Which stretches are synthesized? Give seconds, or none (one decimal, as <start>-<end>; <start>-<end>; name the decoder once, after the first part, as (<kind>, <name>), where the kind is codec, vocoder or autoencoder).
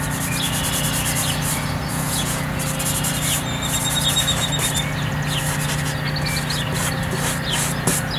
1.9-2.6 (vocoder, Vocos)